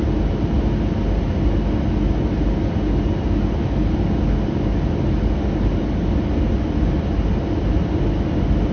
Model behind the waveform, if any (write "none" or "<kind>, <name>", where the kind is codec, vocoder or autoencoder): none